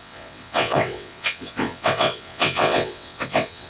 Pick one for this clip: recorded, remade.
remade